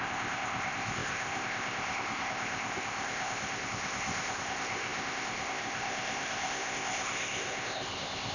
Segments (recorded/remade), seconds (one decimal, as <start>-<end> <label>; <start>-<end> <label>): 0.0-8.3 remade